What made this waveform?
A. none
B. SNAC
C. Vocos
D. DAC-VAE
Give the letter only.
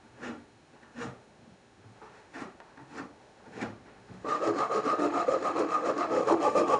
D